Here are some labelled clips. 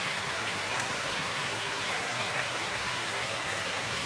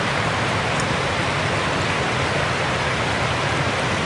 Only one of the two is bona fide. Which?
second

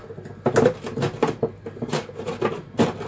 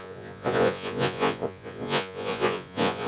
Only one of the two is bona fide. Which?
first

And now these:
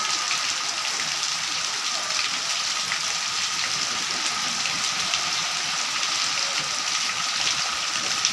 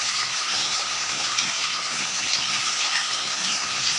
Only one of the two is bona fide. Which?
first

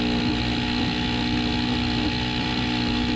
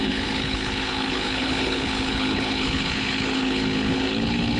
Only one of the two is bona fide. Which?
first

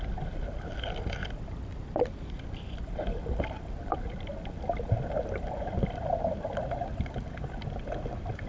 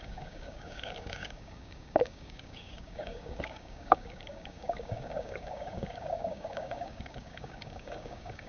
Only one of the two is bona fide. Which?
first